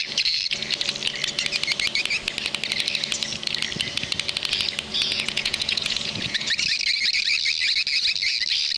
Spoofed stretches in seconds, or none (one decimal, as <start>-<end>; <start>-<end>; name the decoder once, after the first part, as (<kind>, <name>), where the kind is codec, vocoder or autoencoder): 4.9-6.5 (vocoder, Vocos)